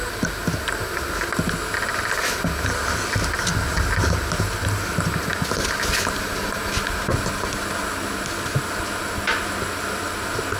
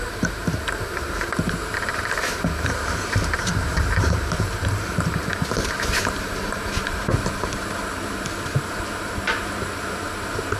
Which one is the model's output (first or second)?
second